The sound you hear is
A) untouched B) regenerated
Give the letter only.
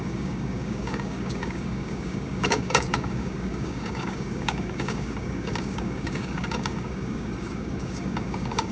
B